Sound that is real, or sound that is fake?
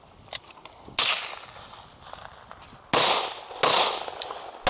real